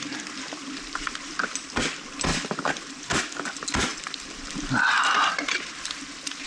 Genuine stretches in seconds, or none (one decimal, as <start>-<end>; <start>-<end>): 0.0-2.3; 3.2-3.9; 4.7-6.5